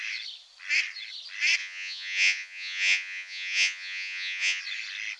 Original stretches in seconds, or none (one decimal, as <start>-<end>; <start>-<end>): 0.0-1.6; 4.6-5.2